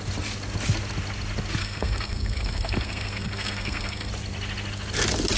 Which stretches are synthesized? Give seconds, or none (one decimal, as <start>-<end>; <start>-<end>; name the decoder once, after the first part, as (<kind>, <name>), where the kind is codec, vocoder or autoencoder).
1.6-4.1 (codec, SNAC)